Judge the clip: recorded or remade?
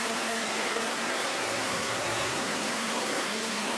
remade